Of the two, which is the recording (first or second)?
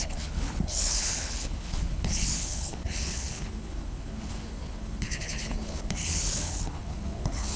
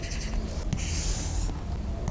second